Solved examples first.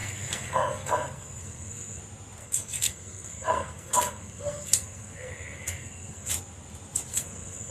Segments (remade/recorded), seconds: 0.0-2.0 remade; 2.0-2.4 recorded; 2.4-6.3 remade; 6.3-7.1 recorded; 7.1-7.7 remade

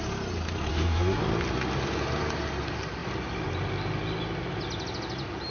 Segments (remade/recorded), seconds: 0.0-0.7 recorded; 0.7-1.2 remade; 1.2-5.5 recorded

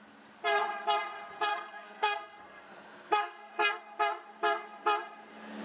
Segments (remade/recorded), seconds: 0.0-1.5 recorded; 1.5-3.5 remade; 3.5-5.6 recorded

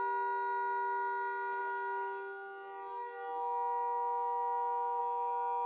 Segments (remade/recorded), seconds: 0.0-5.7 recorded

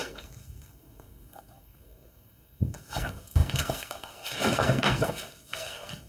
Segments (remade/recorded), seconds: 0.0-6.1 remade

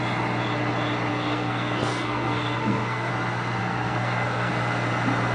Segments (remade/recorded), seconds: 0.0-1.1 recorded; 1.1-3.1 remade; 3.1-3.6 recorded; 3.6-4.5 remade; 4.5-5.3 recorded

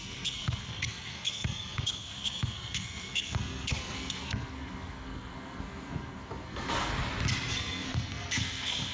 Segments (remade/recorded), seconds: 0.0-6.9 remade; 6.9-7.5 recorded; 7.5-8.9 remade

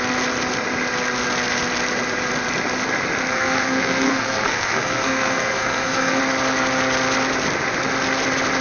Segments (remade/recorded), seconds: 0.0-3.3 recorded; 3.3-6.2 remade; 6.2-8.6 recorded